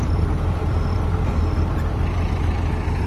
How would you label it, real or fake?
fake